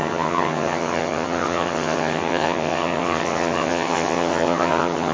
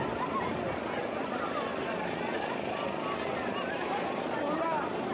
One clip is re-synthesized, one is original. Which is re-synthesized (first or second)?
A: first